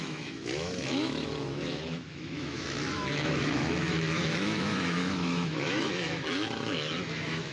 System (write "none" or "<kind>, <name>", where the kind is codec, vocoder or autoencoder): autoencoder, DAC-VAE